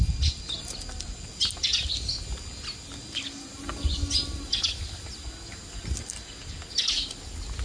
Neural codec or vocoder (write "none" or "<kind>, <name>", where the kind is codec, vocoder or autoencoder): none